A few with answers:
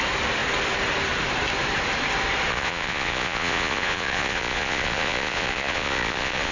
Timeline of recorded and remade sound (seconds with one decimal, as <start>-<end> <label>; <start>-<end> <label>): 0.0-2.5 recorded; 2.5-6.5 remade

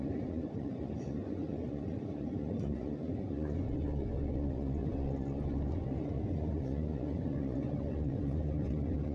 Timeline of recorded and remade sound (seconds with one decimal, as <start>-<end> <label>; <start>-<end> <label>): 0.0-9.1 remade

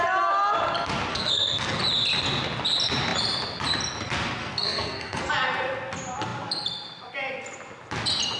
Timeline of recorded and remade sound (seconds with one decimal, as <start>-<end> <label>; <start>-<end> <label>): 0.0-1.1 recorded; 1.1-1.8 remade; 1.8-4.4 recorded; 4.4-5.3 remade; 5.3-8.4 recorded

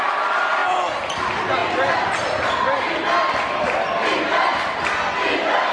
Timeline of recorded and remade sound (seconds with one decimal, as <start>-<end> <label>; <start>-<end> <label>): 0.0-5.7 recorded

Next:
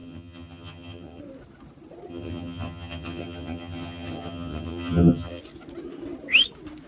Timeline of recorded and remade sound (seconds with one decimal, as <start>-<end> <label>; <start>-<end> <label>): 0.0-1.2 remade; 1.2-2.1 recorded; 2.1-5.4 remade; 5.4-6.9 recorded

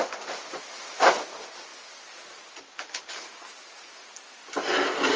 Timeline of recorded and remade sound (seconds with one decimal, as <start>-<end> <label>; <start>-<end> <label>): 0.0-5.2 recorded

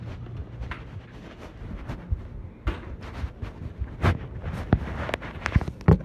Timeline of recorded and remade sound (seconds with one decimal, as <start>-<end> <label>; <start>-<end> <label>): 0.0-6.0 recorded